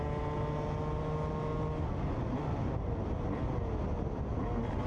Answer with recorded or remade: recorded